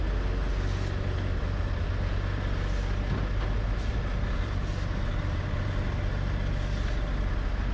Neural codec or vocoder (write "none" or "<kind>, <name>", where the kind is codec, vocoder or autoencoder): none